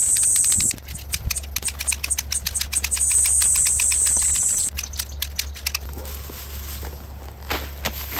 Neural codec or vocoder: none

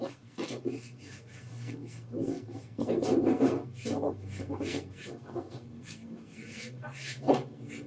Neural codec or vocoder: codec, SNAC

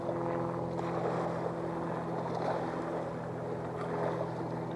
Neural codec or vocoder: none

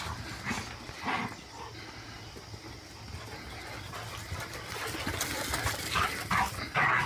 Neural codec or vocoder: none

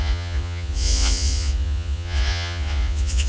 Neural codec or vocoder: vocoder, Vocos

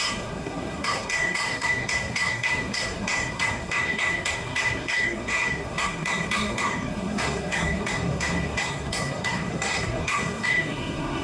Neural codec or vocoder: codec, SNAC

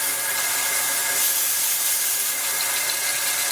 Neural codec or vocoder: none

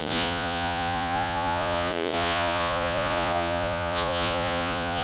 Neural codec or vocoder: vocoder, Vocos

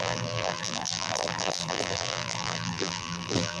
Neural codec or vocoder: vocoder, BigVGAN v2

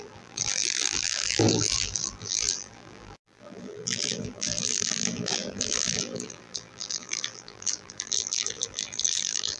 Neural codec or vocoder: vocoder, BigVGAN v2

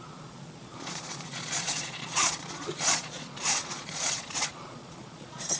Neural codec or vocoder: vocoder, Vocos